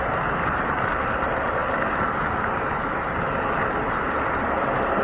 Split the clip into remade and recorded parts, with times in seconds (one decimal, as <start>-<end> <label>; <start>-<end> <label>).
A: 0.0-5.0 recorded